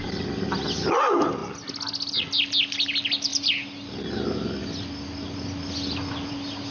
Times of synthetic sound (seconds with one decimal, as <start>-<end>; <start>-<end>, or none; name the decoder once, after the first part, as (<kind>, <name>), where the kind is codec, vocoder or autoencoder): none

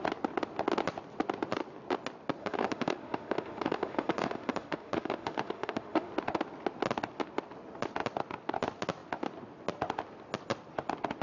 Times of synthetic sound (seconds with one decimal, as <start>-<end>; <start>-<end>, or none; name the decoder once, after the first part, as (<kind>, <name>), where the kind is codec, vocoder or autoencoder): 2.4-6.1 (autoencoder, DAC-VAE)

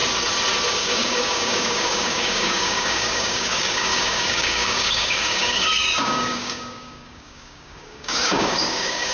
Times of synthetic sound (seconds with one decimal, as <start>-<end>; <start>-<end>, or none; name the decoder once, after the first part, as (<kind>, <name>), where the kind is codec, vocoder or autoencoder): 0.7-9.1 (codec, DAC)

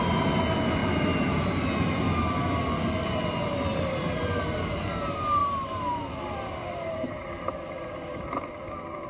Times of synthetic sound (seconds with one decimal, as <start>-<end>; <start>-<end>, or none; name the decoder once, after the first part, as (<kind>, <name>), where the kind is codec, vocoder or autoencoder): 3.7-4.9 (vocoder, BigVGAN v2); 5.4-8.7